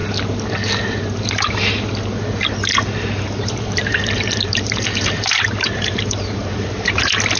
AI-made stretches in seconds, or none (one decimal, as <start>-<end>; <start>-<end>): 3.2-7.4